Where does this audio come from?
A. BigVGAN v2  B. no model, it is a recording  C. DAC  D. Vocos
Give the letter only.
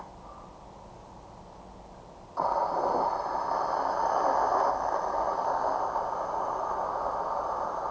B